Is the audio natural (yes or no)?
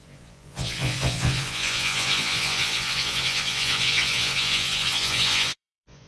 no